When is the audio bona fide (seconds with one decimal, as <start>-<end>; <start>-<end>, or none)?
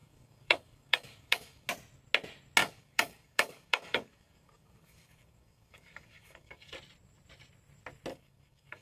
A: 1.7-2.6; 6.7-8.1